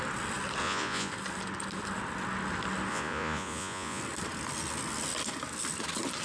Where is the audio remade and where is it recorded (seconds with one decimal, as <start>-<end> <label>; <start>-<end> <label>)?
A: 0.0-0.6 recorded; 0.6-1.1 remade; 1.1-2.9 recorded; 2.9-4.0 remade; 4.0-6.2 recorded